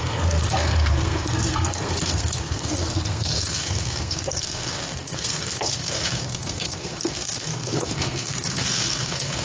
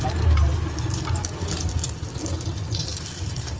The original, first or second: second